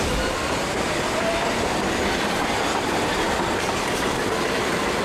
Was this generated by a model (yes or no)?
yes